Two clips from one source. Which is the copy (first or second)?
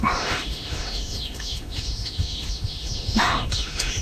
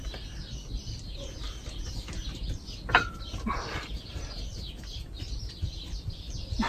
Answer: first